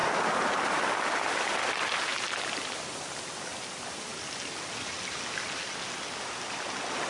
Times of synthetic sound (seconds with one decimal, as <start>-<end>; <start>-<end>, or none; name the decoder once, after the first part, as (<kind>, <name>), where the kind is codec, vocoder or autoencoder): none